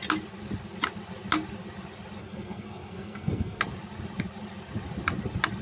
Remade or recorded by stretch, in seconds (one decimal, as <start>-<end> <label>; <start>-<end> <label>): 0.0-2.2 recorded; 2.2-3.6 remade; 3.6-5.6 recorded